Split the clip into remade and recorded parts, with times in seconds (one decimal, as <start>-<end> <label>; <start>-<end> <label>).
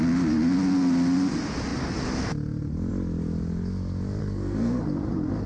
0.0-4.2 recorded; 4.2-4.8 remade; 4.8-5.5 recorded